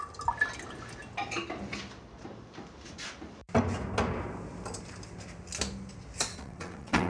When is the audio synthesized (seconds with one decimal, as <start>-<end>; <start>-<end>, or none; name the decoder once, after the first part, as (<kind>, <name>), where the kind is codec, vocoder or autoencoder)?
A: 6.3-7.1 (vocoder, WaveNeXt)